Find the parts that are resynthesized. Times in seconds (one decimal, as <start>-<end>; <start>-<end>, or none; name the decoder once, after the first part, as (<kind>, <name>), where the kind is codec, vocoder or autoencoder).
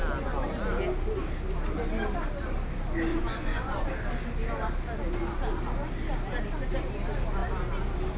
3.1-3.9 (vocoder, Vocos)